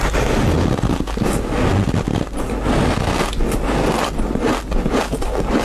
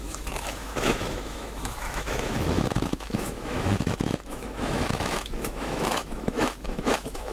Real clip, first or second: first